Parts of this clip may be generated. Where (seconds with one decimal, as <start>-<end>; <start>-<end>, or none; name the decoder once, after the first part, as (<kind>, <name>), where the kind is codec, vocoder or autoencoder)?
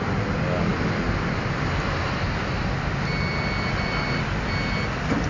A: none